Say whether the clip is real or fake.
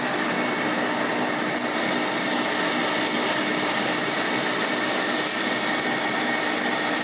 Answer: real